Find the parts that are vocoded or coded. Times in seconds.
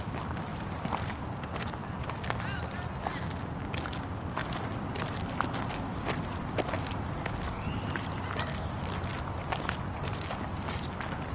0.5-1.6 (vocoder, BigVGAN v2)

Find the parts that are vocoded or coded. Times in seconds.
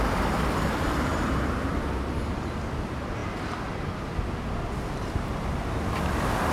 1.1-2.2 (vocoder, BigVGAN v2)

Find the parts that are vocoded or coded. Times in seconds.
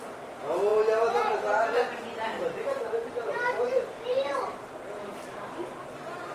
none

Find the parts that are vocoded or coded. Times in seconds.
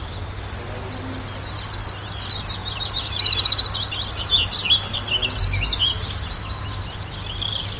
none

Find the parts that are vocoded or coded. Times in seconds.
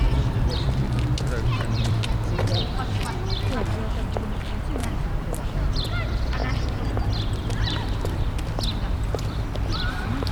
1.5-3.0 (vocoder, BigVGAN v2); 4.8-5.7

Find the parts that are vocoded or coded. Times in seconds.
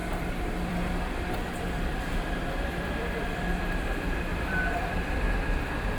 0.0-3.6 (vocoder, BigVGAN v2); 4.3-6.0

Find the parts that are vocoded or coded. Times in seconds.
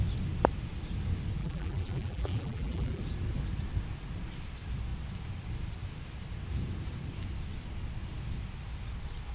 1.4-3.0 (vocoder, BigVGAN v2)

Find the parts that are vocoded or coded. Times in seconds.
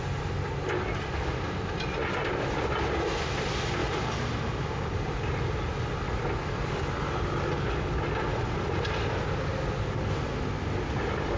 3.8-4.6 (vocoder, BigVGAN v2)